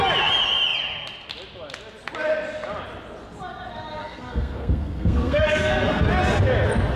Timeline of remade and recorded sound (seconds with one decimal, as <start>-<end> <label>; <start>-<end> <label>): 0.0-4.0 recorded; 4.0-6.0 remade; 6.0-7.0 recorded